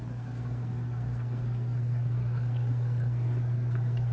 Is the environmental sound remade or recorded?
remade